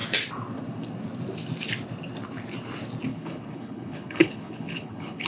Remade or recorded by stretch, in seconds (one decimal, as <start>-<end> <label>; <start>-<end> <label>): 0.0-3.1 recorded; 3.1-5.3 remade